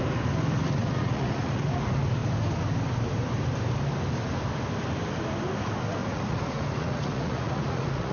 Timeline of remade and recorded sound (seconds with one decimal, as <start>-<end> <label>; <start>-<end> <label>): 0.0-0.8 recorded; 0.8-1.7 remade; 1.7-6.0 recorded; 6.0-8.1 remade